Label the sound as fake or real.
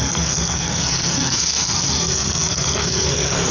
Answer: fake